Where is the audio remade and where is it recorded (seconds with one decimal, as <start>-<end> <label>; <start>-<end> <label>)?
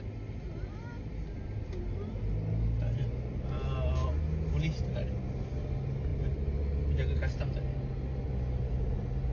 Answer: 0.0-9.3 recorded